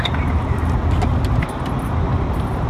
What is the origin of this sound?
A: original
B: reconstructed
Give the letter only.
A